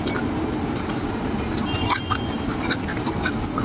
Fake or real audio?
real